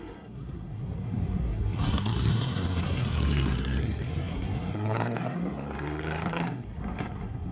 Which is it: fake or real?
fake